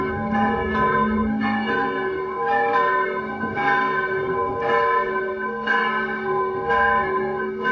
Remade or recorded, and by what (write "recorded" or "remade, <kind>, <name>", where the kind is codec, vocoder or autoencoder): remade, codec, SNAC